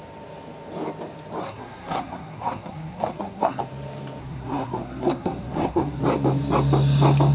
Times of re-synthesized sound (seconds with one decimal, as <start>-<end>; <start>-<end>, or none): 1.4-3.6; 4.2-6.0